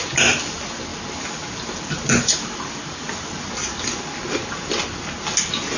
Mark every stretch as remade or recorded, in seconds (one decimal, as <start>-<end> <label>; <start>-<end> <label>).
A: 0.0-5.8 recorded